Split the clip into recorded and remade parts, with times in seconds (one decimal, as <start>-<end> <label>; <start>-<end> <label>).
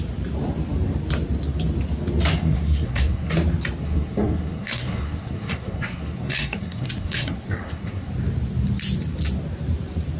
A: 0.0-2.4 recorded; 2.4-3.3 remade; 3.3-3.8 recorded; 3.8-8.1 remade; 8.1-10.2 recorded